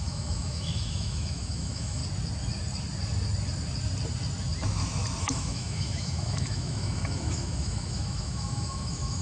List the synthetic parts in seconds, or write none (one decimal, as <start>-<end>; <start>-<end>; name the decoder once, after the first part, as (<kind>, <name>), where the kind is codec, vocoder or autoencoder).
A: 0.0-2.0 (autoencoder, DAC-VAE); 5.2-9.2